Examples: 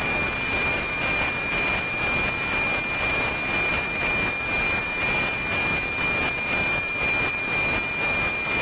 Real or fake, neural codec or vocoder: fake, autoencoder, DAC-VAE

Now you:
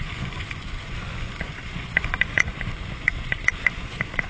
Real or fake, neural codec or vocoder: fake, vocoder, Vocos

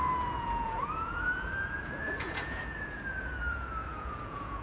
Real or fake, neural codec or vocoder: fake, vocoder, Vocos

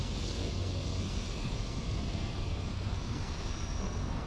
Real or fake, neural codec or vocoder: fake, codec, SNAC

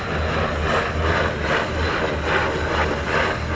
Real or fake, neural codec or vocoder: real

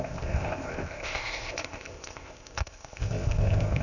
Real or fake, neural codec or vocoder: fake, codec, ZipCodec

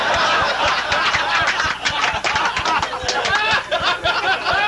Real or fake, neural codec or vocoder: real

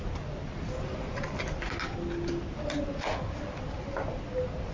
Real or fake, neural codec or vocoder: real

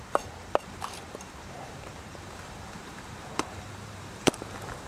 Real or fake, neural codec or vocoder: fake, vocoder, BigVGAN v2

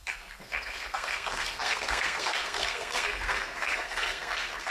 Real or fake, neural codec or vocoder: fake, codec, SNAC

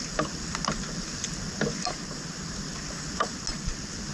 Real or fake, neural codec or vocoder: real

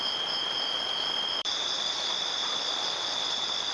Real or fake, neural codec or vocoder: fake, vocoder, BigVGAN v2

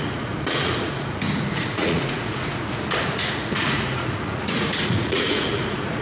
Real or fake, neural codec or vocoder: fake, vocoder, Vocos